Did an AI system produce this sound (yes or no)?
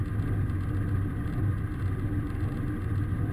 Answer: no